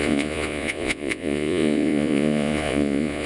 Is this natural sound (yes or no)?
no